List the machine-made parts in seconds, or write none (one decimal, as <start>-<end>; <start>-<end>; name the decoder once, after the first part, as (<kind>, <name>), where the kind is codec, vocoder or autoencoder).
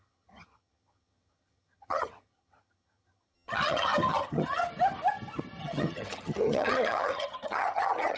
0.0-4.6 (vocoder, HiFi-GAN); 5.6-8.2